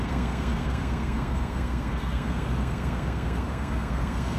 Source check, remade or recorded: remade